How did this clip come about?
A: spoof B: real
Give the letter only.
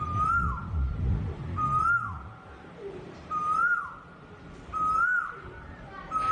B